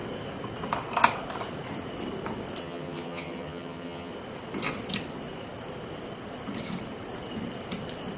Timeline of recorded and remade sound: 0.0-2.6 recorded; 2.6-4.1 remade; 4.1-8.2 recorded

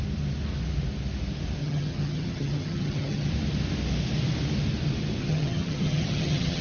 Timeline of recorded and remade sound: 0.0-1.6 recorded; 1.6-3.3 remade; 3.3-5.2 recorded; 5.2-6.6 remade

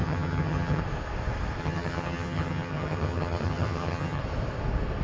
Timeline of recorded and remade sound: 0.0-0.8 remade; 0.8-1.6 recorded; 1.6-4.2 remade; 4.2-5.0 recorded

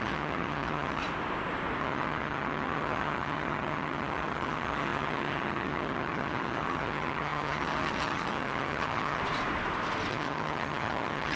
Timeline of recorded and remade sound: 0.0-1.0 remade; 1.0-1.8 recorded; 1.8-9.2 remade; 9.2-10.1 recorded; 10.1-11.4 remade

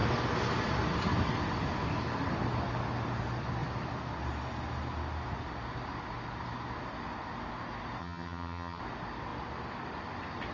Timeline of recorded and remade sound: 0.0-8.0 recorded; 8.0-8.8 remade; 8.8-10.5 recorded

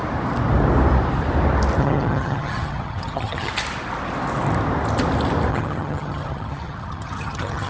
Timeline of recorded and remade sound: 0.0-1.8 recorded; 1.8-3.5 remade; 3.5-5.5 recorded; 5.5-7.7 remade

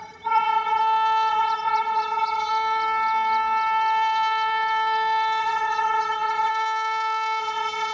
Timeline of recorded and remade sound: 0.0-0.8 remade; 0.8-1.3 recorded; 1.3-2.5 remade; 2.5-5.4 recorded; 5.4-6.5 remade; 6.5-7.4 recorded; 7.4-7.9 remade